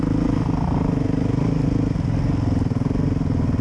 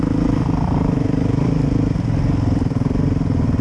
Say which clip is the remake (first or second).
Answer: second